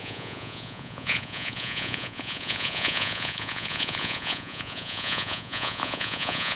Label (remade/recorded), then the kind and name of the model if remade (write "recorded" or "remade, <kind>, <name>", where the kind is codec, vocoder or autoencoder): remade, vocoder, Vocos